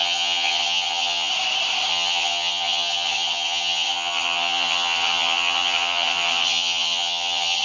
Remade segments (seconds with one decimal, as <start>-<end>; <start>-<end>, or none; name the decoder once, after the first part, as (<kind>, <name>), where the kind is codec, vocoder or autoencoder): 0.0-1.3 (vocoder, HiFi-GAN); 1.9-7.6